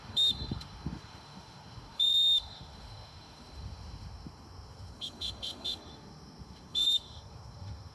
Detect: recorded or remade remade